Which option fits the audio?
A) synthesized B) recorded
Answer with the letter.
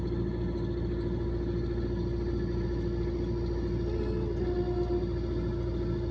B